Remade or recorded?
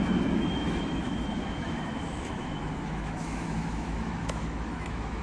remade